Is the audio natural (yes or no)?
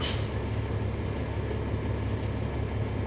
yes